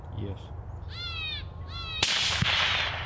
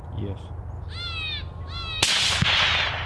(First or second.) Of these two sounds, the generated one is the first